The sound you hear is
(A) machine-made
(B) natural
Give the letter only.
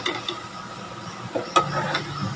B